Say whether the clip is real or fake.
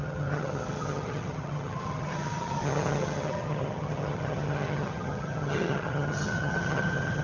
fake